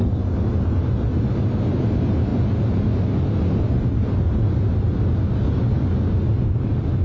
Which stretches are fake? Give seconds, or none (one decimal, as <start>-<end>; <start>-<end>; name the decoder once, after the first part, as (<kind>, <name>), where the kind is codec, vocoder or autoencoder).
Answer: none